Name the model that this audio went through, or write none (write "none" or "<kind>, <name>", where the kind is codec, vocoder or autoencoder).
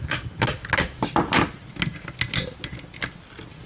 none